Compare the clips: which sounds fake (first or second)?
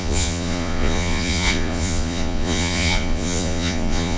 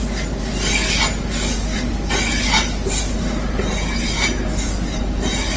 first